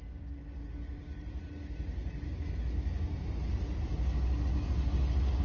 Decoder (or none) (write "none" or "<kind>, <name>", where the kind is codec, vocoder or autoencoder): none